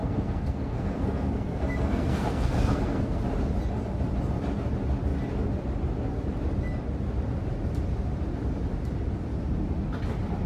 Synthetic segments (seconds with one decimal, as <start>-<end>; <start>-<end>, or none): 0.0-3.2